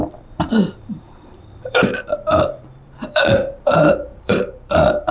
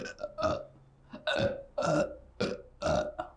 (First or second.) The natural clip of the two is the second